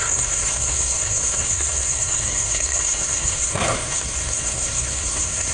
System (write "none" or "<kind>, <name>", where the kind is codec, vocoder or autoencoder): codec, SNAC